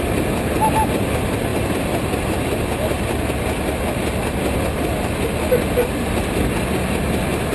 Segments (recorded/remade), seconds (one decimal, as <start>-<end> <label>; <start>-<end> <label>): 0.0-7.5 recorded